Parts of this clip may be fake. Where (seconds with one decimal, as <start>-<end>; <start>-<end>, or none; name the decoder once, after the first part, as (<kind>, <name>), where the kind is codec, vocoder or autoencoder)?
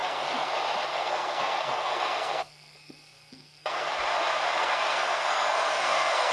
0.0-0.5 (codec, SNAC); 0.9-3.9; 4.6-6.3